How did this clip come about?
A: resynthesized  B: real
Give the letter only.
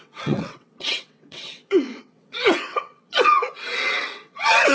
A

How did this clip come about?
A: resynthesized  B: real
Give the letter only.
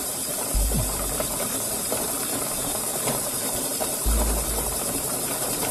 A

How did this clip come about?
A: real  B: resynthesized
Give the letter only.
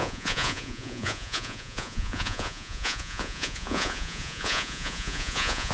B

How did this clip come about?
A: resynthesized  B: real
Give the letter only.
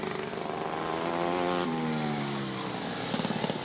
B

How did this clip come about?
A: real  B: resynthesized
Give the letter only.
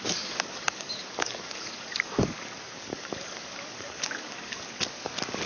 B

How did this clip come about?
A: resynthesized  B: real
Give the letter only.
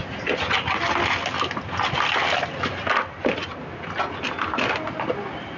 B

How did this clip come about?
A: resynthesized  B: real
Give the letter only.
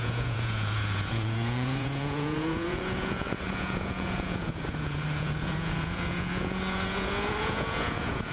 A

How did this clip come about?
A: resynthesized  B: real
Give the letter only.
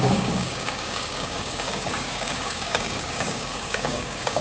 A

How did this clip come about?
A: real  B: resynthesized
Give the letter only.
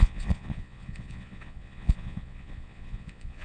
B